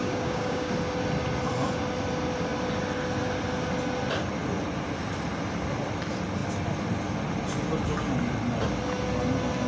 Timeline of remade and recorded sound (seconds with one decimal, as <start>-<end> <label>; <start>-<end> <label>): 0.0-0.7 remade; 0.7-9.7 recorded